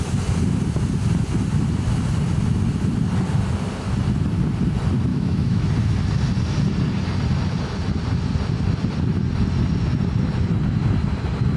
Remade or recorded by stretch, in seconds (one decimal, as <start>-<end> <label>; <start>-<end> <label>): 0.0-5.1 recorded; 5.1-5.7 remade; 5.7-11.6 recorded